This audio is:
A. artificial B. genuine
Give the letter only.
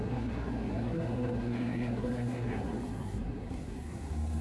A